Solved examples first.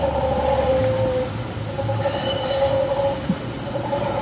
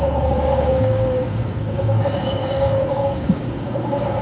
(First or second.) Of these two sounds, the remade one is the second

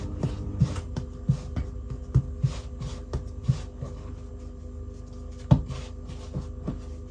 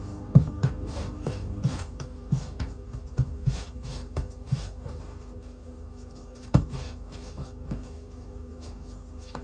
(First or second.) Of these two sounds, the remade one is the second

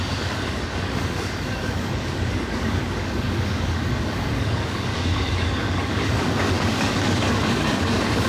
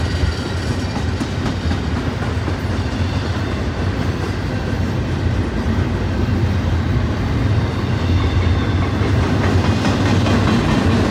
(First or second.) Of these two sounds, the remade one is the first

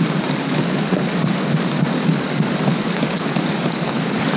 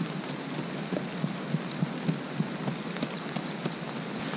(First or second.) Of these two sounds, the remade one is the first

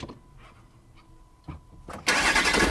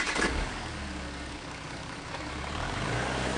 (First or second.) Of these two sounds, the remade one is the second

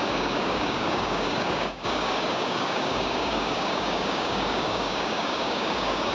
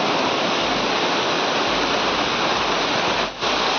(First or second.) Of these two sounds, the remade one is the first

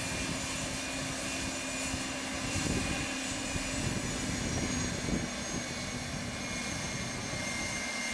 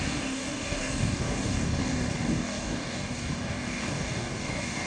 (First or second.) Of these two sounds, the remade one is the second